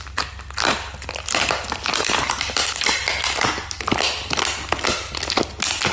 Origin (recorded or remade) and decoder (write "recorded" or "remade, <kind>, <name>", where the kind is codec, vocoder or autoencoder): recorded